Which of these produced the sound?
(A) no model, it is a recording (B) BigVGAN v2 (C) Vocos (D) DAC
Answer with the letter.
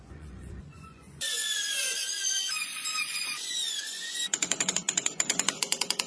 C